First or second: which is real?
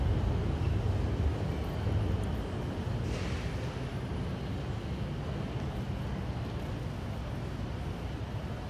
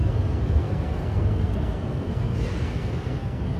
first